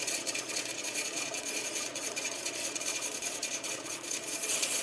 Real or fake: fake